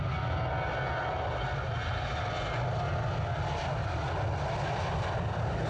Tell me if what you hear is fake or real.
real